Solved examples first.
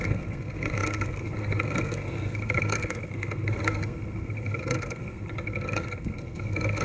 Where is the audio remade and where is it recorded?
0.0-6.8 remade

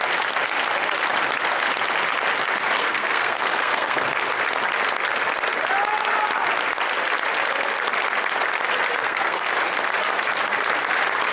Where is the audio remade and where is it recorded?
0.0-2.8 recorded; 2.8-4.0 remade; 4.0-9.0 recorded; 9.0-9.5 remade; 9.5-11.3 recorded

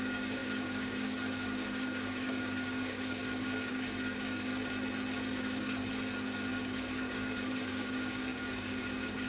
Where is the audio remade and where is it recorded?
0.0-4.5 remade; 4.5-5.4 recorded; 5.4-5.9 remade; 5.9-6.5 recorded; 6.5-9.3 remade

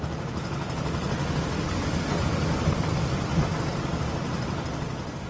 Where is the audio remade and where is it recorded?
0.0-3.3 recorded; 3.3-4.6 remade; 4.6-5.3 recorded

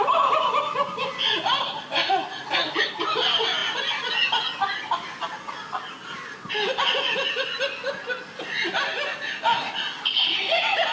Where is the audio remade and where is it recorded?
0.0-10.9 recorded

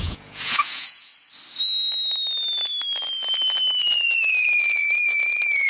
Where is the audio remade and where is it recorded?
0.0-1.1 remade; 1.1-3.8 recorded; 3.8-5.7 remade

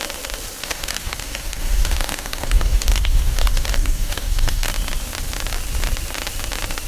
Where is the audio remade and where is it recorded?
0.0-0.6 recorded; 0.6-4.7 remade; 4.7-6.9 recorded